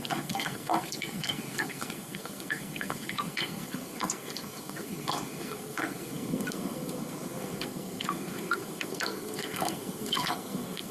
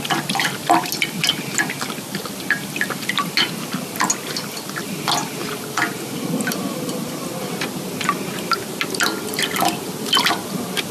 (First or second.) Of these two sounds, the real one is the second